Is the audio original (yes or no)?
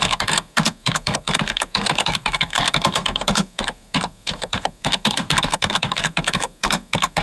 no